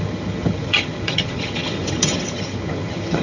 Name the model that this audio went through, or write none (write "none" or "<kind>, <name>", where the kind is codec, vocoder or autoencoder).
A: vocoder, HiFi-GAN